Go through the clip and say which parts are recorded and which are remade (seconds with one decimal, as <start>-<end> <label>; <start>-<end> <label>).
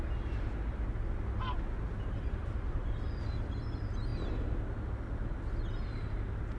0.0-2.4 recorded; 2.4-3.2 remade; 3.2-6.6 recorded